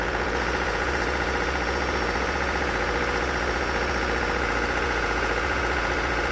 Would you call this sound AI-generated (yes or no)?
yes